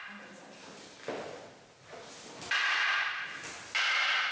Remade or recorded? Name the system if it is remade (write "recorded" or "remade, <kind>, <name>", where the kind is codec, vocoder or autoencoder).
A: recorded